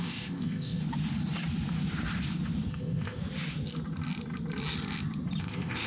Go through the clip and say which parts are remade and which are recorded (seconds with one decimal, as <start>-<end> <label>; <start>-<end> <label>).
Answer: 0.0-0.8 remade; 0.8-2.7 recorded; 2.7-3.2 remade; 3.2-5.4 recorded; 5.4-5.9 remade